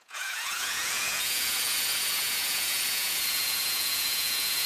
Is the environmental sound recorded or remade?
remade